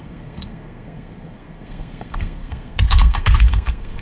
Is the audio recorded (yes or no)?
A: no